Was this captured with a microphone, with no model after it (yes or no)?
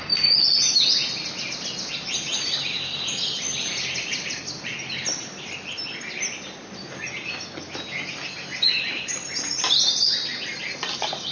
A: yes